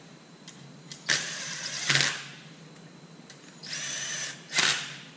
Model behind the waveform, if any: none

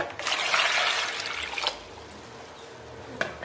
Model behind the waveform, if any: none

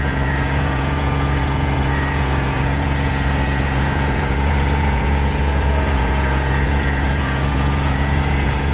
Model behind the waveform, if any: vocoder, Vocos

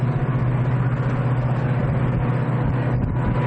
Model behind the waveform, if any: none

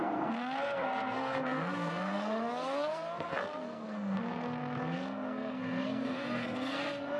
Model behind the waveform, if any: codec, SNAC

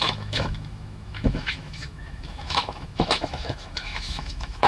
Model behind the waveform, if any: autoencoder, DAC-VAE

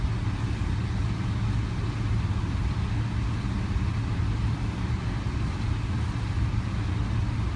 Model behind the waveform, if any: none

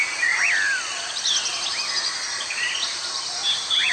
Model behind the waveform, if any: none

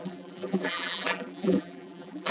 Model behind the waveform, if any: vocoder, BigVGAN v2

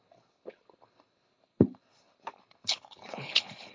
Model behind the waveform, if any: codec, HILCodec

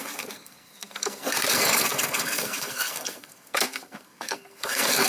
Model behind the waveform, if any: codec, SNAC